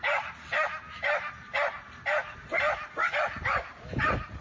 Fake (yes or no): no